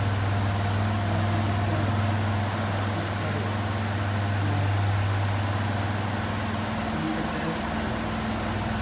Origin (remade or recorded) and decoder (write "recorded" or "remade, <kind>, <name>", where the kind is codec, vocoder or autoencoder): recorded